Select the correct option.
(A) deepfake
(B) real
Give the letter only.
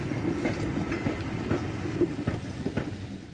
B